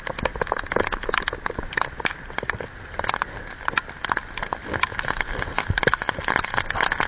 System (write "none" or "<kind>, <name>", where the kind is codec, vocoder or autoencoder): none